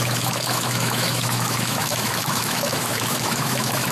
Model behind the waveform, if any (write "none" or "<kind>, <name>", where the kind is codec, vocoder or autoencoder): autoencoder, DAC-VAE